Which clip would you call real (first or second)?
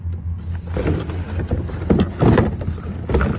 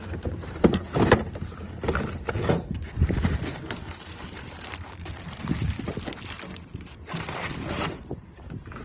first